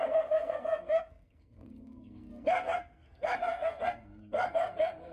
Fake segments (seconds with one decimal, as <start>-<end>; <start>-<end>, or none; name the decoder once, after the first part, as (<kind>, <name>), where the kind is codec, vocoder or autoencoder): 0.0-5.1 (codec, SNAC)